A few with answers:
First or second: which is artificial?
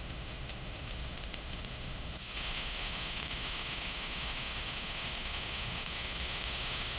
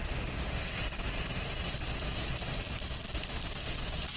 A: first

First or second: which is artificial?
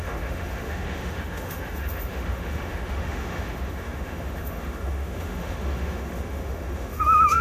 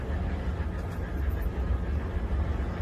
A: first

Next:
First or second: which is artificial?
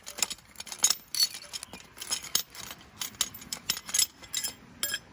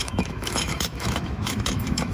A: second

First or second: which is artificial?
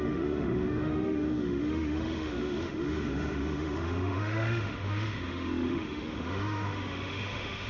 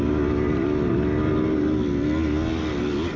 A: first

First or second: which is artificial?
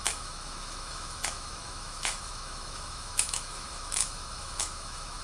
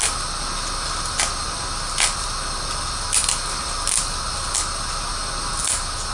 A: first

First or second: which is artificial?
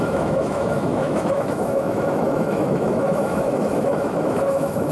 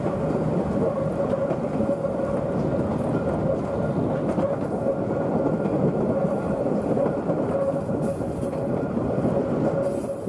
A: first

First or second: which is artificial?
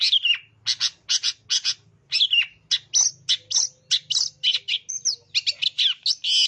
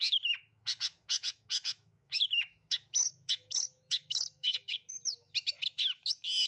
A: second